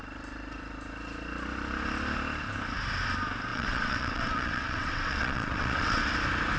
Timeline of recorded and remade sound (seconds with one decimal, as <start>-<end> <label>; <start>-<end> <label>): 0.0-3.5 recorded; 3.5-6.1 remade; 6.1-6.6 recorded